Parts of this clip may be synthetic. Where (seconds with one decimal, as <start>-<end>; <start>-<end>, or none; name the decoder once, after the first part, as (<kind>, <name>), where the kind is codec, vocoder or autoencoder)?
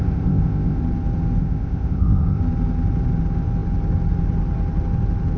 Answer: 0.0-0.8 (codec, ZipCodec); 1.4-2.4